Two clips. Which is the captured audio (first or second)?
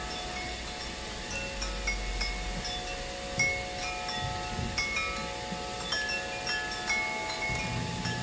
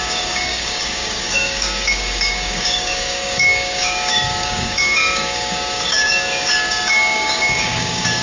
first